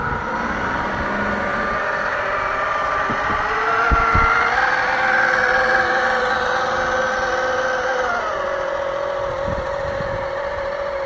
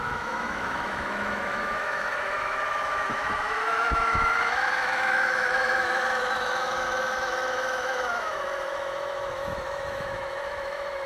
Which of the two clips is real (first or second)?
first